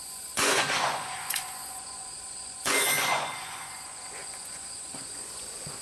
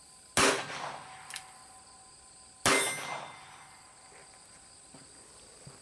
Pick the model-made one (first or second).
first